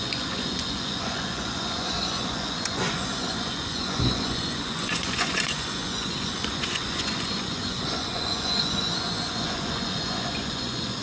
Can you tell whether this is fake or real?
fake